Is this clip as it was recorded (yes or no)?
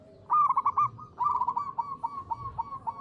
yes